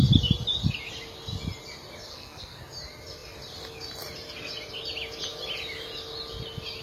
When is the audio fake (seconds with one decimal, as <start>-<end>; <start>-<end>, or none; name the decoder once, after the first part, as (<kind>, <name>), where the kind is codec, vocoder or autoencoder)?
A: 2.1-2.6 (codec, SNAC)

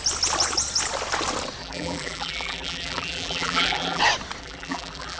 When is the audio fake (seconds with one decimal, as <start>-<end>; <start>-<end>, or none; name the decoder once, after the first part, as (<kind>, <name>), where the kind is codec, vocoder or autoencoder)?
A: 1.6-4.0 (vocoder, BigVGAN v2); 4.4-5.2